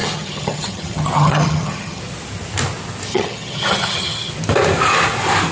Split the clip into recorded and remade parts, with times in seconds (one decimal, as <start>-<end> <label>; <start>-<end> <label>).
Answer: 0.0-2.0 remade; 2.0-3.1 recorded; 3.1-4.3 remade; 4.3-5.5 recorded